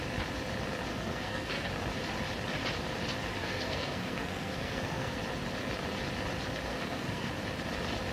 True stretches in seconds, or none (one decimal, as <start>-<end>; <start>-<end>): 0.0-0.9; 1.7-3.3; 5.2-6.7; 7.3-8.1